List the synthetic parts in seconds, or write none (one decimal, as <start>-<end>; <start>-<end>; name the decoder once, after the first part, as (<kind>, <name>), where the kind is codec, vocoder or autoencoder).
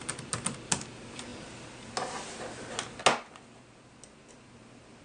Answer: none